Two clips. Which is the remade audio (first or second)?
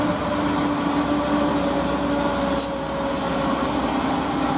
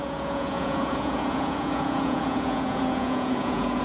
second